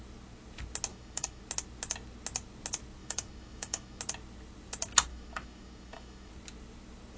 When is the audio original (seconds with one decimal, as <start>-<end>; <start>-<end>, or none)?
0.0-0.9; 1.4-3.0; 4.0-5.1; 6.3-7.2